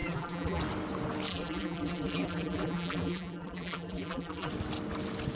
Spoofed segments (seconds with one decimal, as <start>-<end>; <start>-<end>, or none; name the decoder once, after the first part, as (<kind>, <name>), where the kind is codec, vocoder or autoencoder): 0.0-0.6 (vocoder, BigVGAN v2); 1.3-4.5